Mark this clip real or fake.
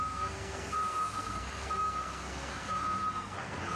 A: fake